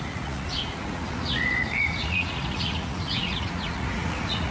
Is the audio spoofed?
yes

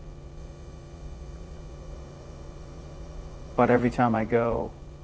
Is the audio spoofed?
yes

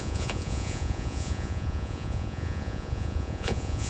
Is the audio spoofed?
yes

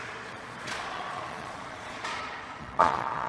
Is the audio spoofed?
yes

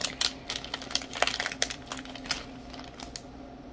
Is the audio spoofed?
no